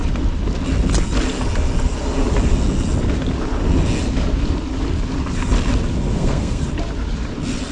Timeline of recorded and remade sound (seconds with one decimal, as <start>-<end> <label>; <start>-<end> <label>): 0.0-6.1 recorded; 6.1-6.6 remade; 6.6-7.7 recorded